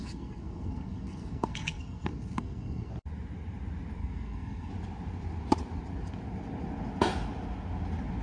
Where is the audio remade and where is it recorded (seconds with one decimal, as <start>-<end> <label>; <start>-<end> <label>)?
0.0-2.9 remade; 2.9-4.0 recorded; 4.0-4.7 remade; 4.7-8.2 recorded